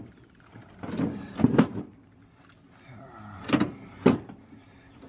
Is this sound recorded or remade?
recorded